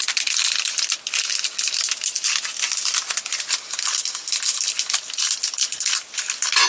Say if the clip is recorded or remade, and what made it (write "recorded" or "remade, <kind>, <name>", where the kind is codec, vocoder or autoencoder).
recorded